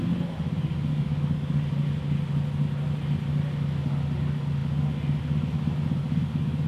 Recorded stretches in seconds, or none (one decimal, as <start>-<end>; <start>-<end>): 0.0-0.9; 1.7-6.0

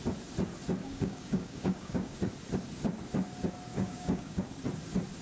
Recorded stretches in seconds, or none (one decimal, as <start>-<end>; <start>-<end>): 0.0-0.8; 2.2-3.7; 4.4-5.2